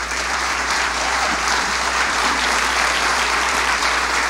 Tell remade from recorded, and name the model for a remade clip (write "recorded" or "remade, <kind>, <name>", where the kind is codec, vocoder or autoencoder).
remade, vocoder, BigVGAN v2